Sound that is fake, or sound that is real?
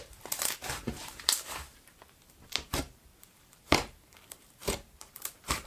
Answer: fake